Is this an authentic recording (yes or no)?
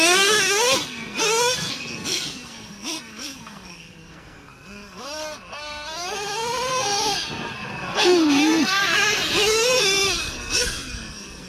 no